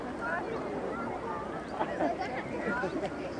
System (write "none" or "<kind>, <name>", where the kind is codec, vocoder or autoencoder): none